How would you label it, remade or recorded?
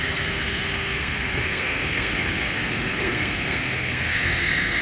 remade